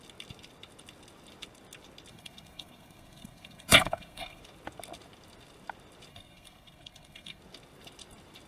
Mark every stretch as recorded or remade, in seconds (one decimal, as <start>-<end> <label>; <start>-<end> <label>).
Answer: 0.0-2.1 recorded; 2.1-4.4 remade; 4.4-6.1 recorded; 6.1-7.4 remade; 7.4-8.5 recorded